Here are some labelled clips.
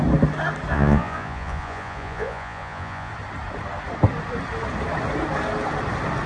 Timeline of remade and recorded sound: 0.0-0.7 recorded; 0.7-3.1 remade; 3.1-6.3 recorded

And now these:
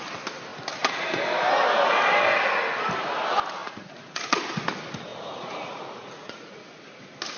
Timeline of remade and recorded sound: 0.0-3.6 recorded; 3.6-4.4 remade; 4.4-5.1 recorded; 5.1-6.6 remade; 6.6-7.4 recorded